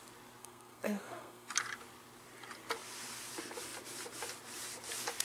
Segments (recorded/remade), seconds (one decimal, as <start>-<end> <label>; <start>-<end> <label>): 0.0-0.4 recorded; 0.4-1.5 remade; 1.5-5.2 recorded